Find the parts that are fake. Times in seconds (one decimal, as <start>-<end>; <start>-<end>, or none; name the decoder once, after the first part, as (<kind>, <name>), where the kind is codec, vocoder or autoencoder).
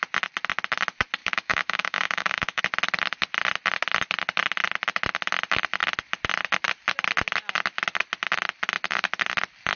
1.2-2.6 (autoencoder, DAC-VAE)